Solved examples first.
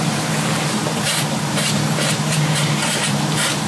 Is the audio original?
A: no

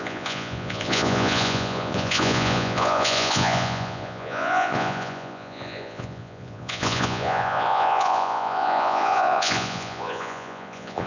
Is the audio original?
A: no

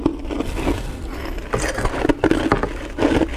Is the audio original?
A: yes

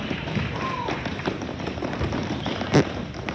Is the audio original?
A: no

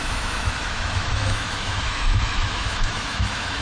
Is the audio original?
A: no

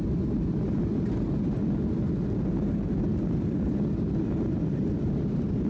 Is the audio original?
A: yes